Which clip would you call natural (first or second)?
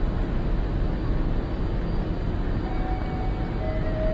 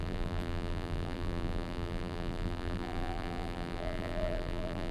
first